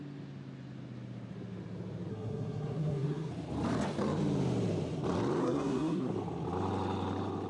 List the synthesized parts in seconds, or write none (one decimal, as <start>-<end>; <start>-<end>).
2.1-3.3; 5.4-6.1